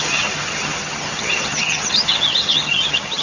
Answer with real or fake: fake